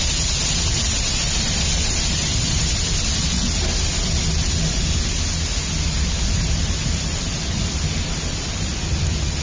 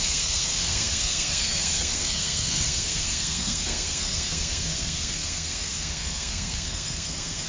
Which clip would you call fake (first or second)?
second